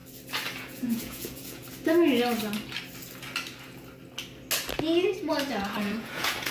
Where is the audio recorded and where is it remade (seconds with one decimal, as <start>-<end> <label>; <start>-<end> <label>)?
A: 0.0-0.6 recorded; 0.6-1.6 remade; 1.6-5.5 recorded; 5.5-6.5 remade